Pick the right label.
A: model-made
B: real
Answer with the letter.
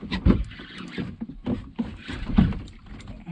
B